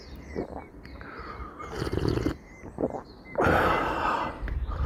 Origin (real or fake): fake